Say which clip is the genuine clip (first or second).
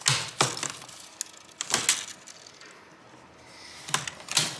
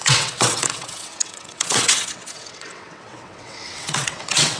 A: first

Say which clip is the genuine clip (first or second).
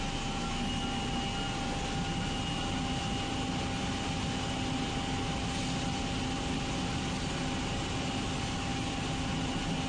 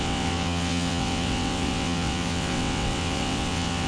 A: first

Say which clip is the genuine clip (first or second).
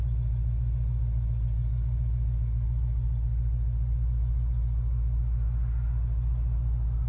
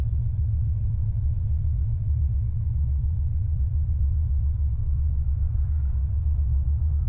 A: first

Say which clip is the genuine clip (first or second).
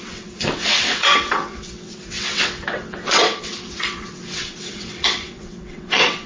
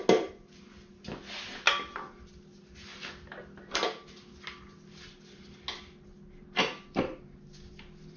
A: second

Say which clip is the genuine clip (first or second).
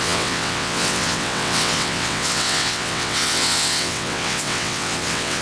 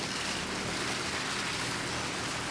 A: second